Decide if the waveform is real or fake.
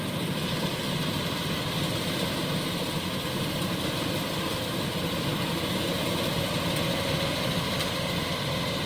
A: real